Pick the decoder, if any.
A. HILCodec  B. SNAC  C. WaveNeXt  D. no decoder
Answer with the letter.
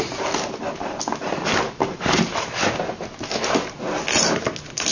D